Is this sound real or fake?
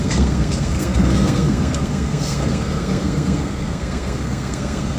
fake